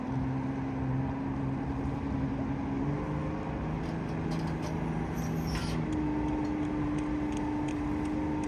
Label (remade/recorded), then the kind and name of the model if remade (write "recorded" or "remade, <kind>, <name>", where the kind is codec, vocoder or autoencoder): recorded